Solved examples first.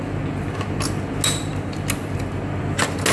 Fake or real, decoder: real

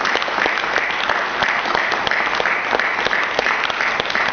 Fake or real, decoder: real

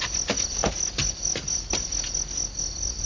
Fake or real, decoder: real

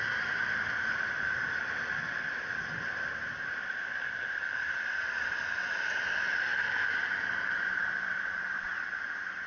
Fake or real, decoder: real